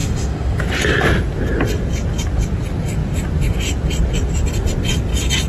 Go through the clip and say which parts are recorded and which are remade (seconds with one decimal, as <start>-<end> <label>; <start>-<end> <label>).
0.0-0.6 remade; 0.6-5.5 recorded